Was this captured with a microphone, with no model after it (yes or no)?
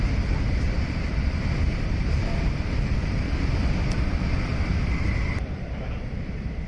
no